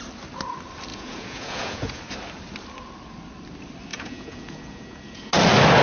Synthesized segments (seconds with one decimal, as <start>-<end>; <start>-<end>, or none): 0.9-2.0; 3.9-5.3